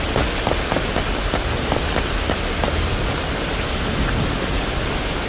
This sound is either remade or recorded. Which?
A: recorded